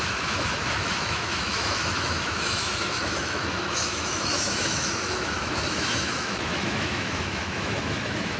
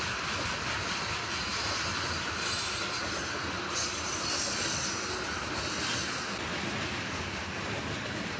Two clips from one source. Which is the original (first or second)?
second